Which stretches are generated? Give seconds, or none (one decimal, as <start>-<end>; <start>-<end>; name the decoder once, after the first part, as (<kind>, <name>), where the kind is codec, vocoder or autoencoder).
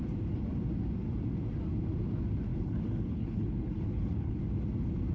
2.5-4.4 (codec, HILCodec)